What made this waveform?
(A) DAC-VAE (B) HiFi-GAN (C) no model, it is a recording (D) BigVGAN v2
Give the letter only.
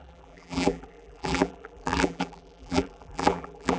D